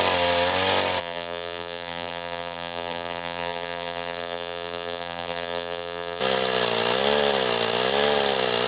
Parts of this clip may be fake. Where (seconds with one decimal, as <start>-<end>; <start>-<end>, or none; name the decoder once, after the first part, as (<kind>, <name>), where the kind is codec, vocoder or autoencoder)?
1.0-6.2 (vocoder, BigVGAN v2)